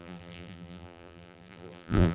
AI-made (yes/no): yes